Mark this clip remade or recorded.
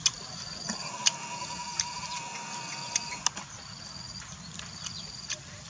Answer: recorded